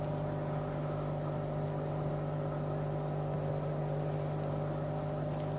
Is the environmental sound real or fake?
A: real